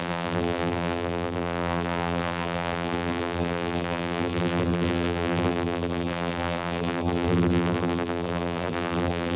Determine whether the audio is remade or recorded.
remade